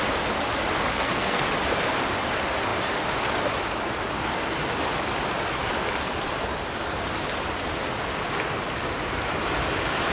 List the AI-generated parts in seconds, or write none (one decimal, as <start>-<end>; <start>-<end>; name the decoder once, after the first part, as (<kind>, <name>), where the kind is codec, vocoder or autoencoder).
0.9-1.4 (codec, SNAC)